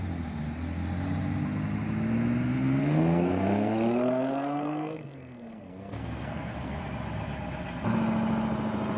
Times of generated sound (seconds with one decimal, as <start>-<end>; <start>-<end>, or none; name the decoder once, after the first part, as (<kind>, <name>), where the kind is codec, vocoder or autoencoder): 2.8-6.8 (codec, SNAC)